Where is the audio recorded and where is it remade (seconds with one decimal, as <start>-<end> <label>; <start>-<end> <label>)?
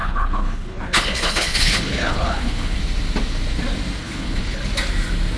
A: 0.0-2.8 remade; 2.8-4.0 recorded; 4.0-4.6 remade; 4.6-5.4 recorded